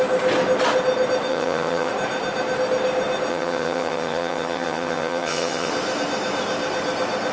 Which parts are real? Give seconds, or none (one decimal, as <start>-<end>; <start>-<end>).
0.0-1.3; 1.9-3.3; 5.7-7.3